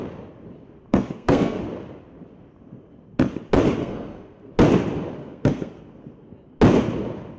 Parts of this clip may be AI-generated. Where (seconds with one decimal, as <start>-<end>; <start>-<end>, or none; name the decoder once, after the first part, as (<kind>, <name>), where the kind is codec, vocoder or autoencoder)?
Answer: 0.9-1.6 (codec, SNAC); 3.8-4.5; 5.2-5.8